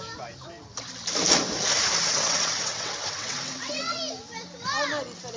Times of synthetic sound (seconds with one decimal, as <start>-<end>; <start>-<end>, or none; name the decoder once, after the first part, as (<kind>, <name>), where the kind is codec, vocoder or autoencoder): 2.0-4.0 (vocoder, WaveNeXt)